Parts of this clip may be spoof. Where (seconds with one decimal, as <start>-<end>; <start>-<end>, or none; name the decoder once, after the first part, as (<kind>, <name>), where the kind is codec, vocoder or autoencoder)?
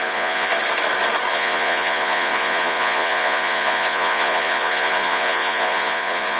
0.0-0.5 (vocoder, Vocos); 1.3-6.4